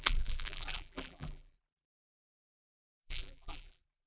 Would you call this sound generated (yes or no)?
yes